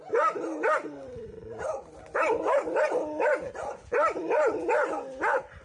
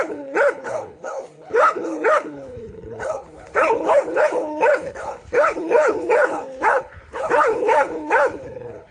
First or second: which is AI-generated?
second